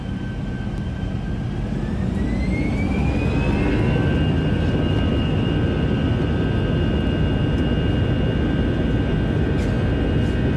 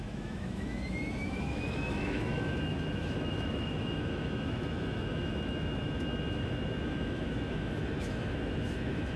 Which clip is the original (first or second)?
first